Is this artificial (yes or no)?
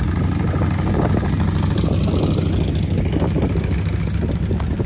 no